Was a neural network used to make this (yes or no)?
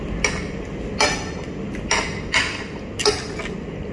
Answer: no